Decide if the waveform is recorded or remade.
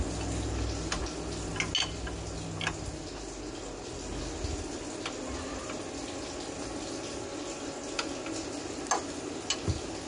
recorded